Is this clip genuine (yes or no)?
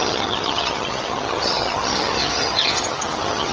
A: no